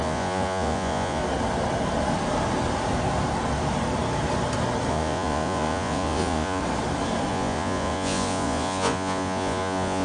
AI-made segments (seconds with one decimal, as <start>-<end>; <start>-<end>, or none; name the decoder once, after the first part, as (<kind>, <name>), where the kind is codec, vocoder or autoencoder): 0.0-1.2 (vocoder, Vocos); 4.9-6.6; 7.3-10.0